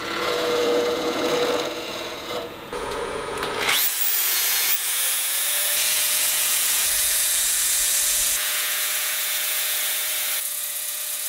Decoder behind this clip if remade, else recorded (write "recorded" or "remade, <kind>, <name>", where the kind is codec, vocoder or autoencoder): remade, vocoder, Vocos